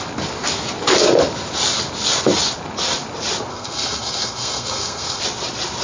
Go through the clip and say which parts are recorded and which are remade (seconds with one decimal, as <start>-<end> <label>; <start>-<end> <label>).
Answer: 0.0-3.5 recorded; 3.5-5.2 remade; 5.2-5.8 recorded